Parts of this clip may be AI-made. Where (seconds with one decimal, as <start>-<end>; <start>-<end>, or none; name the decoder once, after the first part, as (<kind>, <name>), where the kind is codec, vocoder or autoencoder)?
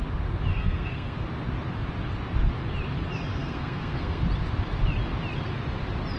0.5-1.2 (codec, SNAC); 3.4-4.2